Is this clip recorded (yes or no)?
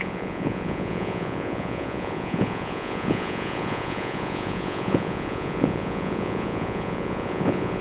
no